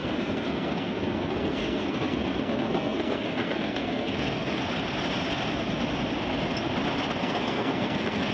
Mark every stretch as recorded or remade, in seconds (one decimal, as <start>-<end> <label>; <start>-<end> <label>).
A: 0.0-4.6 remade; 4.6-7.2 recorded; 7.2-8.3 remade